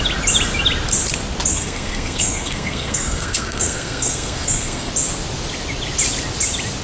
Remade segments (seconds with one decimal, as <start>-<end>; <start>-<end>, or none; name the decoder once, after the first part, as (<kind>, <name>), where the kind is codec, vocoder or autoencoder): 1.5-4.9 (codec, SNAC)